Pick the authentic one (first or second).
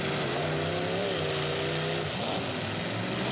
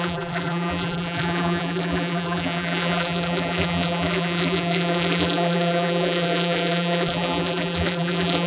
first